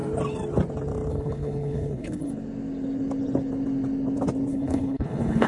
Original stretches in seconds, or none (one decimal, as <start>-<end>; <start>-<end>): 0.0-1.1; 2.3-4.5